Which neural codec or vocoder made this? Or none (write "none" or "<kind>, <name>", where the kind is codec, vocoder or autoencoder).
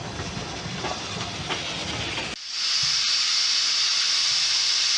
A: none